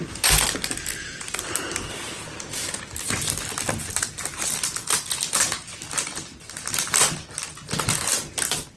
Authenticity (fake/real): real